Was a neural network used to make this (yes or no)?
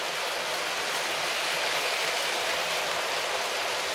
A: no